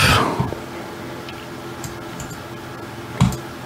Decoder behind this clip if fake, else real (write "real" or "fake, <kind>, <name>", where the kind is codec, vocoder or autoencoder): real